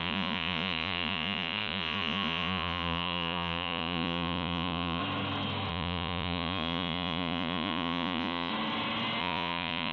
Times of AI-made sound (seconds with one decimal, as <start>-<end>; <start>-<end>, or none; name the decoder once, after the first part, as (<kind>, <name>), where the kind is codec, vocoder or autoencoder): 0.0-5.0 (vocoder, Vocos); 5.7-8.5; 9.2-9.9